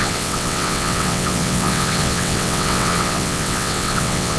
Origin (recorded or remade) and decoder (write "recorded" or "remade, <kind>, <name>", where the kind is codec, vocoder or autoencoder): remade, vocoder, WaveNeXt